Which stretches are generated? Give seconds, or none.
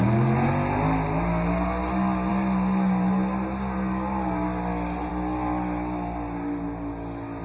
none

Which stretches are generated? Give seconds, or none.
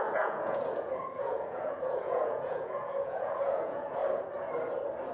0.0-4.0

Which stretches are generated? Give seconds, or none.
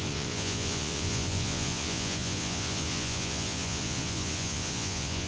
0.0-5.3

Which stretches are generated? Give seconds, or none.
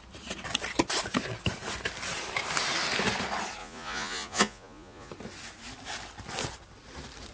3.6-5.1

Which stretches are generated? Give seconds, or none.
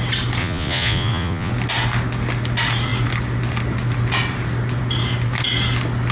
0.4-1.5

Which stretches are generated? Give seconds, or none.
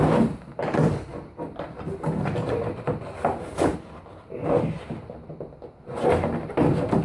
none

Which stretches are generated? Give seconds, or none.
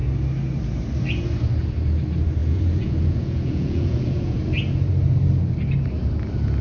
2.4-4.4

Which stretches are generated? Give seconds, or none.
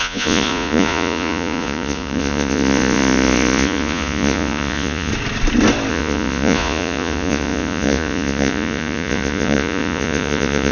0.0-5.1; 5.9-10.7